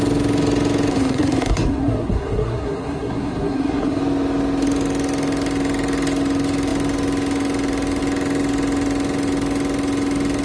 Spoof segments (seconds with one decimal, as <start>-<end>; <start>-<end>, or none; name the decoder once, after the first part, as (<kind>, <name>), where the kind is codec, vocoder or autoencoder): 0.9-4.0 (codec, SNAC)